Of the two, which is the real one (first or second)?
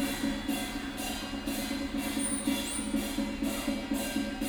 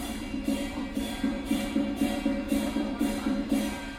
first